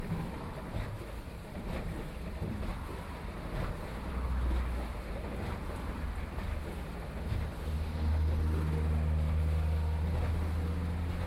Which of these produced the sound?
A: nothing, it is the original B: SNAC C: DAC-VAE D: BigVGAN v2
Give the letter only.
A